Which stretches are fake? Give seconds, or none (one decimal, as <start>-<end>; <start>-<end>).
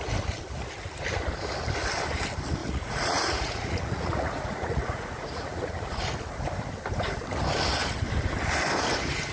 2.6-6.1